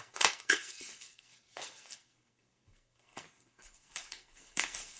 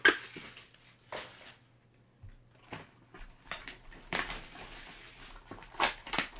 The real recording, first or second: second